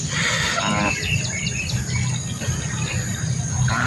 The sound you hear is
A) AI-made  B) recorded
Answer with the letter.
B